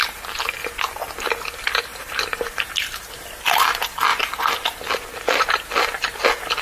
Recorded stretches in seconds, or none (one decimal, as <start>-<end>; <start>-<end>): 0.0-1.9; 3.1-6.6